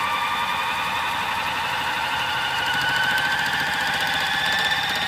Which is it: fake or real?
real